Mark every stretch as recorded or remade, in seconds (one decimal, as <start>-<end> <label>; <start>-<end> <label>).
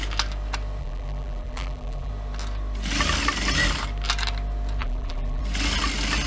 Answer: 0.0-0.8 recorded; 0.8-2.1 remade; 2.1-4.8 recorded; 4.8-5.4 remade; 5.4-6.3 recorded